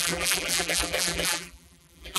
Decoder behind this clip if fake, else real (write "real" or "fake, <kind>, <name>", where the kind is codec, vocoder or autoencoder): fake, vocoder, BigVGAN v2